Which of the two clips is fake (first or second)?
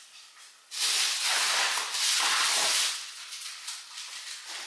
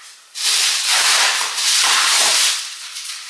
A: second